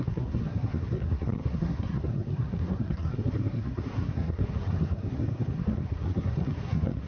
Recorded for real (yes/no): no